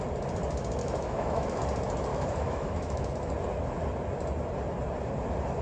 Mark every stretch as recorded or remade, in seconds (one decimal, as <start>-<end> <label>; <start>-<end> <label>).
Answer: 0.0-0.8 recorded; 0.8-1.6 remade; 1.6-2.1 recorded; 2.1-3.1 remade; 3.1-5.6 recorded